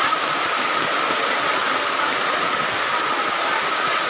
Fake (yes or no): no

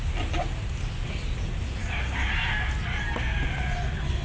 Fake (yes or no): no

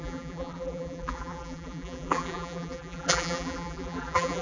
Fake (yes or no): yes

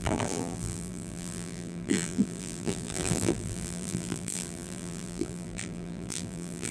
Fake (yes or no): yes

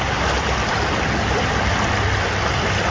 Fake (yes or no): no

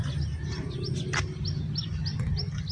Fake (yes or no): no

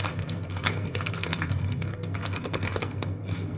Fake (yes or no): yes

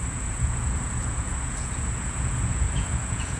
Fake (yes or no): yes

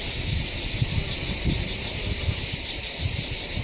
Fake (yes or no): yes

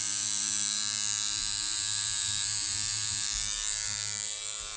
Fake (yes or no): yes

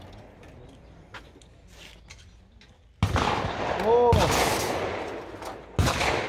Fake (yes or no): no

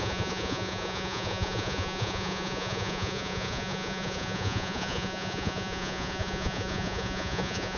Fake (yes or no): yes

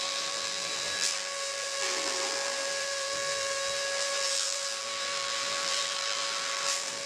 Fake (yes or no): yes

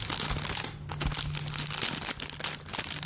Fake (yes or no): no